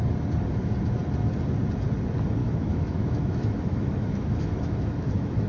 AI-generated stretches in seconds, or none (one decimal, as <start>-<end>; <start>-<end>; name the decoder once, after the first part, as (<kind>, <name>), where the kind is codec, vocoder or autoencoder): 2.4-5.5 (autoencoder, DAC-VAE)